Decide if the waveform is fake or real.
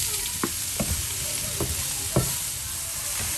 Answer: real